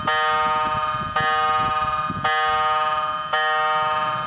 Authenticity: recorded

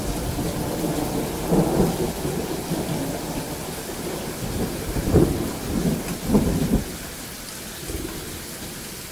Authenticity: recorded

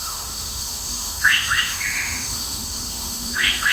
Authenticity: remade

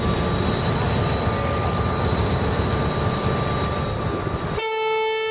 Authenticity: recorded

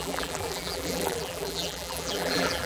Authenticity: remade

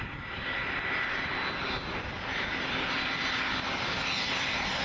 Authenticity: recorded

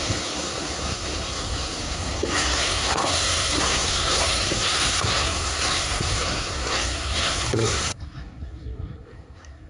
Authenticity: remade